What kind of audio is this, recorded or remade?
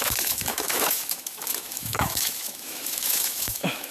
remade